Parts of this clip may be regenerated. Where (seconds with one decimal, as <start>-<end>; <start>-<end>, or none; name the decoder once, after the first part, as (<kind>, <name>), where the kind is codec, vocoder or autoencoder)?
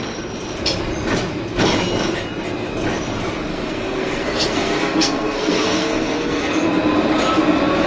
3.5-6.6 (codec, SNAC)